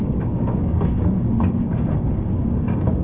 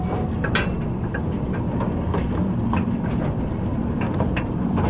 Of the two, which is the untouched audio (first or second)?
second